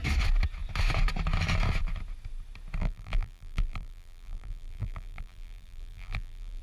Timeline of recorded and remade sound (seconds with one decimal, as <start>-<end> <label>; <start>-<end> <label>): 0.0-2.8 recorded; 2.8-6.6 remade

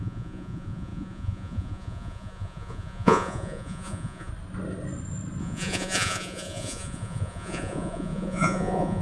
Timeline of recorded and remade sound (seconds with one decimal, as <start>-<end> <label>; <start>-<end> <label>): 0.0-4.3 remade; 4.3-5.4 recorded; 5.4-9.0 remade